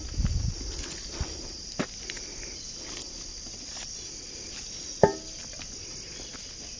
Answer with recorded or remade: recorded